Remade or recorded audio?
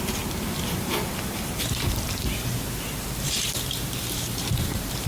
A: remade